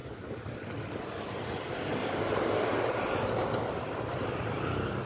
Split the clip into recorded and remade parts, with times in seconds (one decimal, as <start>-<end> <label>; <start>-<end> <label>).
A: 0.0-1.2 recorded; 1.2-5.1 remade